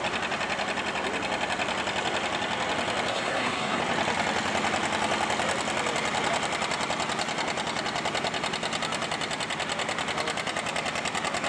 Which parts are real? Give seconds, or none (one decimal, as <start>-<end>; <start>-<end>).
0.0-3.1; 3.8-11.5